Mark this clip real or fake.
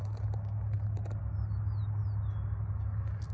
real